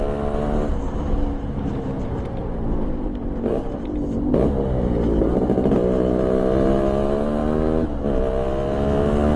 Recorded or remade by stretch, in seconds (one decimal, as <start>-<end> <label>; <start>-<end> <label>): 0.0-9.4 recorded